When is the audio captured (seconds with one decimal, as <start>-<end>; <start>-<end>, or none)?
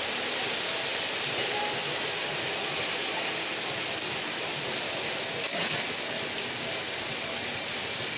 0.0-8.2